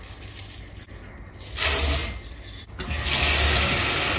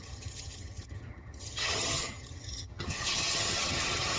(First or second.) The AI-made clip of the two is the second